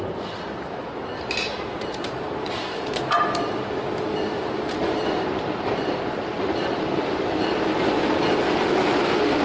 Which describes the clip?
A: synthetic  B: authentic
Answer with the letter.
B